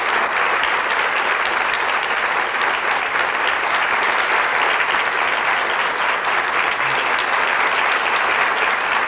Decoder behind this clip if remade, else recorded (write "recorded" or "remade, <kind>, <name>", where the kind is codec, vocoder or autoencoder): recorded